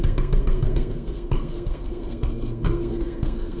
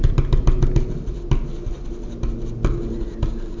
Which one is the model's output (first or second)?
first